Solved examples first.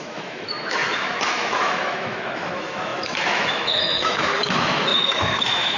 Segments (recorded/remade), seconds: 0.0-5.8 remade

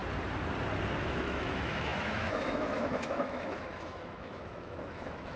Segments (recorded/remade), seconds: 0.0-1.0 recorded; 1.0-5.4 remade

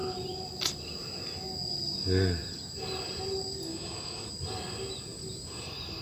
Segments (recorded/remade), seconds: 0.0-3.7 recorded; 3.7-4.3 remade; 4.3-6.0 recorded